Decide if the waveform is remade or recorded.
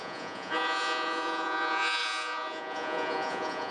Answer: remade